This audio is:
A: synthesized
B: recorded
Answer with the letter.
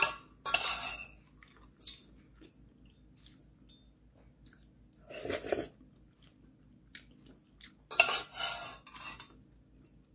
B